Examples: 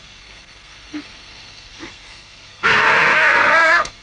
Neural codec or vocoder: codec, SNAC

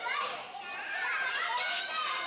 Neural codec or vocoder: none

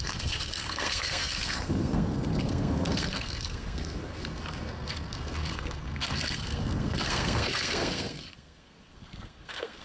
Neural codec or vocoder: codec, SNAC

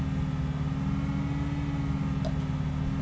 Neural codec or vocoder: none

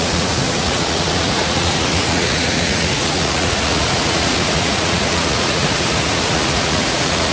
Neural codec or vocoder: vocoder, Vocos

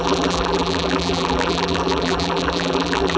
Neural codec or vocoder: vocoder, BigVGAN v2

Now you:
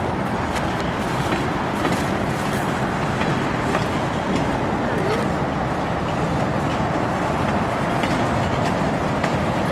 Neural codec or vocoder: none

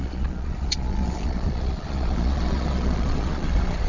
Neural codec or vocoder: vocoder, Vocos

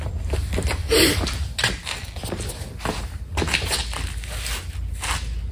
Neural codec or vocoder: none